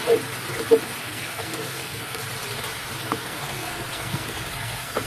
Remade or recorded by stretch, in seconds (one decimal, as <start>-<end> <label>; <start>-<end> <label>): 0.0-1.0 recorded; 1.0-2.2 remade; 2.2-3.0 recorded; 3.0-5.1 remade